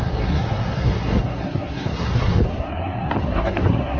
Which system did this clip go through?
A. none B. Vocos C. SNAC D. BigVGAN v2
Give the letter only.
C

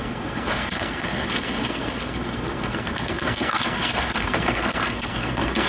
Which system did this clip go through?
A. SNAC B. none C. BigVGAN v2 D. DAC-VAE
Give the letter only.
A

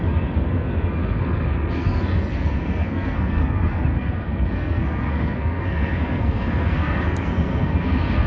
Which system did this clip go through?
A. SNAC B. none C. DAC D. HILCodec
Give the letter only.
A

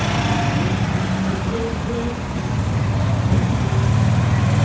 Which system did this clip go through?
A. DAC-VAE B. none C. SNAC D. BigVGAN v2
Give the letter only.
B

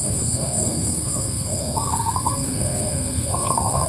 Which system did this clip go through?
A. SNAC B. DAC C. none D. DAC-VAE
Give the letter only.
A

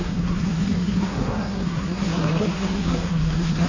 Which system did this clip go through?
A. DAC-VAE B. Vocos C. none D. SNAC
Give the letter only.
D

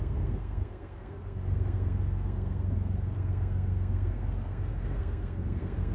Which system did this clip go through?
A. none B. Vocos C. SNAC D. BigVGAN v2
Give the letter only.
C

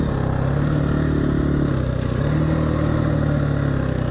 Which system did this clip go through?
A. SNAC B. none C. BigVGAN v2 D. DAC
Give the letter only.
B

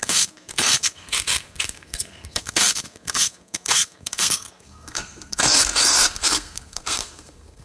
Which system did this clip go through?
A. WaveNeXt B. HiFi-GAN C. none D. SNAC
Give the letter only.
D